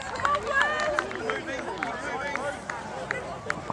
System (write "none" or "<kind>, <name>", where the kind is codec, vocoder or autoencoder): none